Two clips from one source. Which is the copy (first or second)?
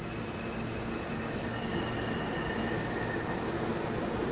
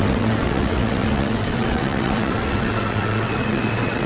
second